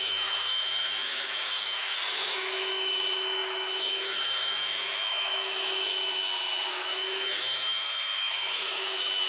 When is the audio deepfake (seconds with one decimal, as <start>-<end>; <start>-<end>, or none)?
0.0-9.3